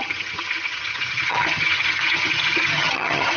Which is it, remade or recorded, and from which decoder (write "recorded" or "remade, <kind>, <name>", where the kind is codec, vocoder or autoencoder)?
remade, vocoder, HiFi-GAN